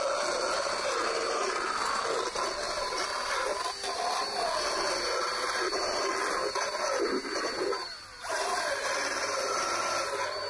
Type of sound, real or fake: real